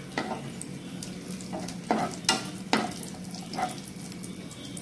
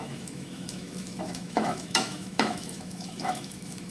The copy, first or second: second